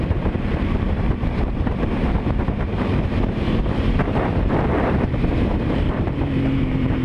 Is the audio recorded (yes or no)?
no